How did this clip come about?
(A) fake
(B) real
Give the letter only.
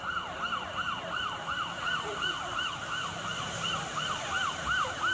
B